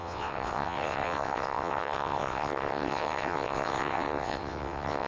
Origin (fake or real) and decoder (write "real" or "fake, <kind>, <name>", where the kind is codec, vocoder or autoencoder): fake, vocoder, WaveNeXt